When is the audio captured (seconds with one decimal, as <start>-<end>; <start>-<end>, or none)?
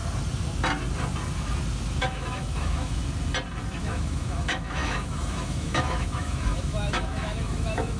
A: 0.0-2.0; 3.0-3.8